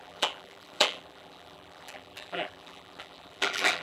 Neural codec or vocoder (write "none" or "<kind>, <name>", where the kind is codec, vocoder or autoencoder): vocoder, BigVGAN v2